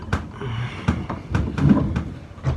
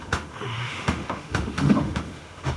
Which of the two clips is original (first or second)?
first